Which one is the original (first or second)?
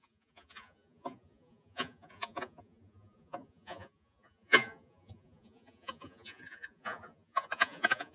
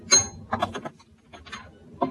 second